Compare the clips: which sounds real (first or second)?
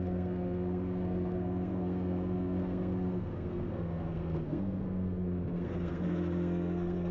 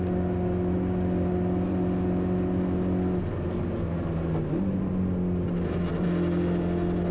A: second